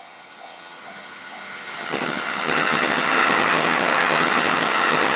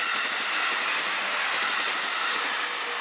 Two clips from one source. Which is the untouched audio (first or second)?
second